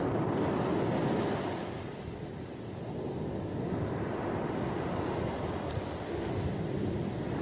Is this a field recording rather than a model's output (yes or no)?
yes